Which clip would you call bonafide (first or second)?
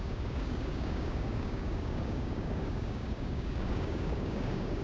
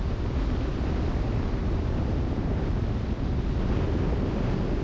second